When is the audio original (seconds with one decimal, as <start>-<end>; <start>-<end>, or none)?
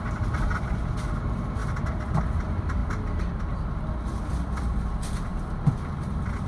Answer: 2.8-4.2